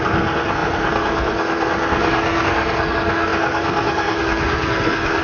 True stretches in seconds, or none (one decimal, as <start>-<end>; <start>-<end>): none